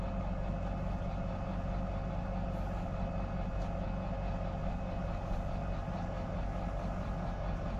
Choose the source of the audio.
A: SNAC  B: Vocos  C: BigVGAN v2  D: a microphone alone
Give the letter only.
D